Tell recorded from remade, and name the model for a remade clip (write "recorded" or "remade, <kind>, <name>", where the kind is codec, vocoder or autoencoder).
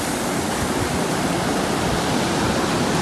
recorded